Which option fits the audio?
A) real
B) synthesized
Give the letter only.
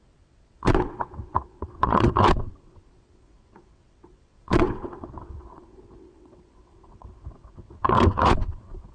B